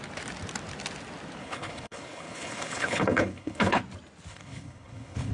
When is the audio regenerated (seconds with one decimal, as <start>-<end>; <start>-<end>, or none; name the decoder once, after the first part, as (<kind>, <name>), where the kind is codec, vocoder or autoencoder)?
1.4-3.8 (codec, HILCodec); 4.3-5.3